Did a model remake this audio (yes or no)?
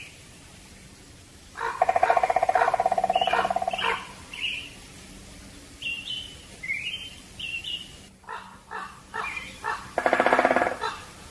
yes